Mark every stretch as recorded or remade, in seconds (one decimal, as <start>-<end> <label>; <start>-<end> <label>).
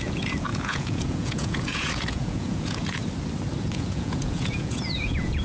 0.0-3.0 remade; 3.0-3.6 recorded; 3.6-5.4 remade